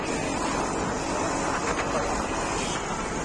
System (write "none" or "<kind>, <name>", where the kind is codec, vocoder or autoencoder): none